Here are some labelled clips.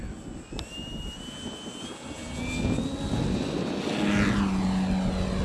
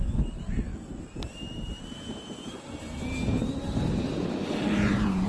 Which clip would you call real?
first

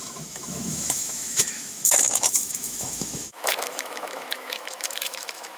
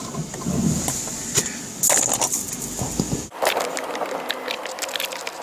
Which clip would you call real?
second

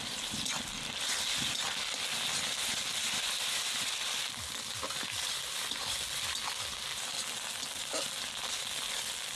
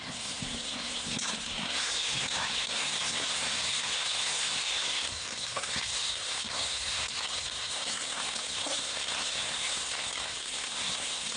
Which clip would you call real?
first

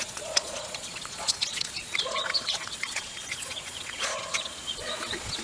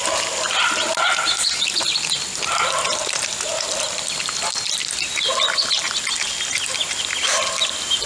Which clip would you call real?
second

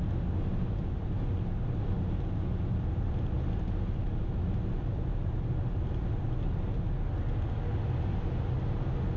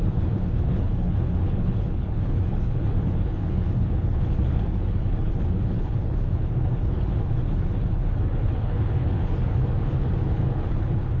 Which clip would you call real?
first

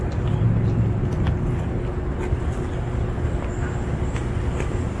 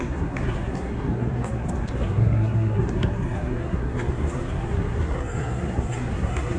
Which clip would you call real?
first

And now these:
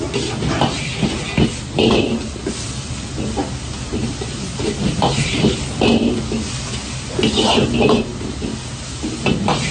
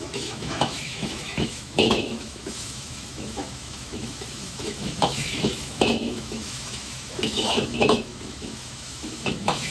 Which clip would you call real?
first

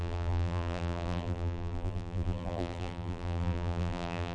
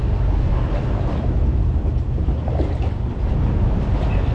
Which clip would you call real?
second